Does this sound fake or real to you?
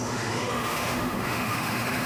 fake